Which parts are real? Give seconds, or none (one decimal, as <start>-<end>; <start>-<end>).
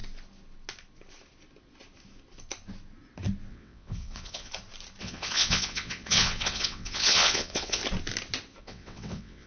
0.0-3.5; 4.5-5.0; 7.8-8.6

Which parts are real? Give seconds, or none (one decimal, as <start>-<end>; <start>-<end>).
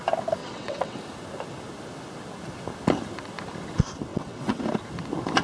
0.0-0.4; 1.0-4.1; 4.6-5.4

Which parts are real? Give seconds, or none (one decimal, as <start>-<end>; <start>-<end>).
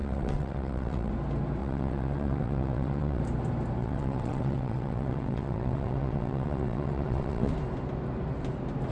1.1-1.6; 3.2-3.8; 7.5-8.9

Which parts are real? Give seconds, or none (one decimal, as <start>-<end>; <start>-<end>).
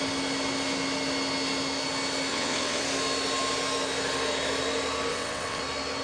0.0-2.3; 2.8-5.1; 5.6-6.0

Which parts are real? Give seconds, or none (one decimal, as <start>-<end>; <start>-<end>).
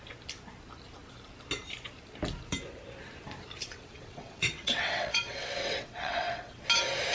0.0-3.6; 6.6-7.1